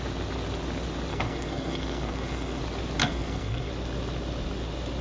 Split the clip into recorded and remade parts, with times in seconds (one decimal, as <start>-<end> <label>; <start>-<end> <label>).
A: 0.0-1.1 recorded; 1.1-2.6 remade; 2.6-3.0 recorded; 3.0-3.7 remade; 3.7-5.0 recorded